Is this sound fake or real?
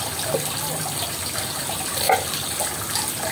real